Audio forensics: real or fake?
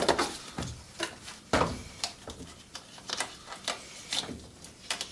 real